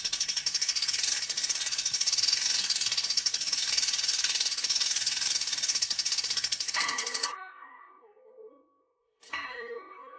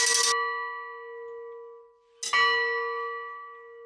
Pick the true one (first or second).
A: second